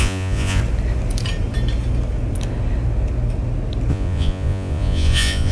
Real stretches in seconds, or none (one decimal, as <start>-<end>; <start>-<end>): 0.6-3.9